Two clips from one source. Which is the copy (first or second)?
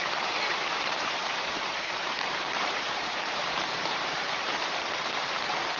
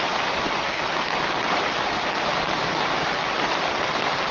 first